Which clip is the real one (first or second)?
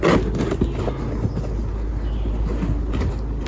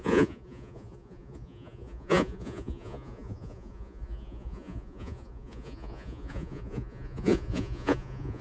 first